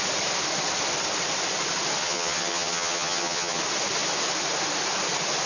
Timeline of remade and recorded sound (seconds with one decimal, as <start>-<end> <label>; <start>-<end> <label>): 0.0-2.0 recorded; 2.0-3.6 remade; 3.6-5.5 recorded